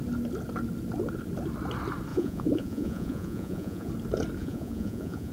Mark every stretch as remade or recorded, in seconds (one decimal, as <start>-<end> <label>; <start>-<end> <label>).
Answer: 0.0-2.1 recorded; 2.1-3.9 remade; 3.9-4.4 recorded; 4.4-5.3 remade